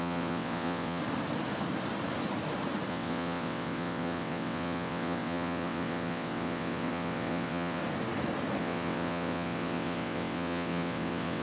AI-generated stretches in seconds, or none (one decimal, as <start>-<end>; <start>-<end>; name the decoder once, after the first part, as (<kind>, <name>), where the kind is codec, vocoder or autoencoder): 0.0-1.0 (vocoder, WaveNeXt); 2.9-7.8; 8.6-11.4